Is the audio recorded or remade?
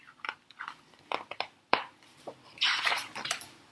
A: remade